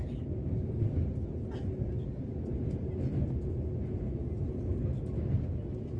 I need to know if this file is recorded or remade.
recorded